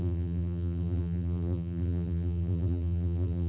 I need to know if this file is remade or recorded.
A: remade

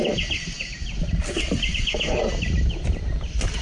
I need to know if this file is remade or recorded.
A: recorded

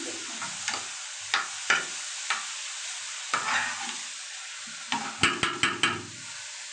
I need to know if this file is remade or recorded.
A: recorded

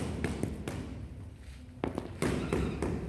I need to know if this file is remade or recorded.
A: recorded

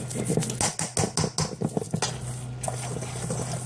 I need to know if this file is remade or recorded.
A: recorded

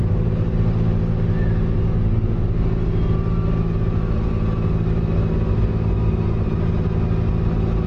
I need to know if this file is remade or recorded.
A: recorded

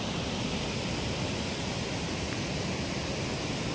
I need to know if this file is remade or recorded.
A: remade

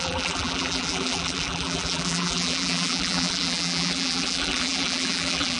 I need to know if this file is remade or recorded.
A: remade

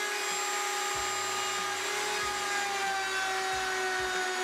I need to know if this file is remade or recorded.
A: recorded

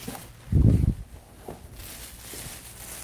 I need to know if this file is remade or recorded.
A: recorded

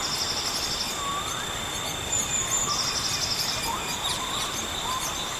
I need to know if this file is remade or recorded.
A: recorded